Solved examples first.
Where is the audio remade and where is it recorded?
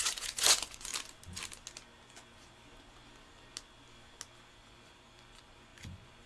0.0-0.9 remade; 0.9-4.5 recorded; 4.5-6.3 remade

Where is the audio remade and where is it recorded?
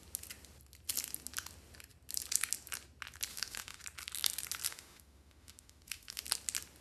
0.0-3.3 recorded; 3.3-3.8 remade; 3.8-4.7 recorded; 4.7-6.2 remade; 6.2-6.8 recorded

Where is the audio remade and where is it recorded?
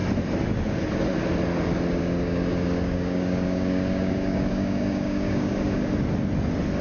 0.0-2.0 recorded; 2.0-5.9 remade; 5.9-6.8 recorded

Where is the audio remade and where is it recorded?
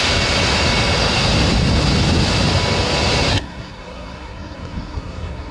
0.0-3.3 recorded; 3.3-5.5 remade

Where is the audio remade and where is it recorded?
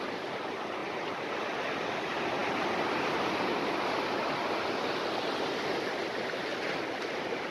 0.0-7.5 recorded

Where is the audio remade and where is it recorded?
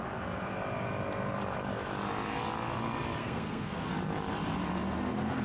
0.0-3.2 recorded; 3.2-3.9 remade; 3.9-5.4 recorded